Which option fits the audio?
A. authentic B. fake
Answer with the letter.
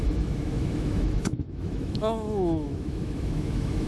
B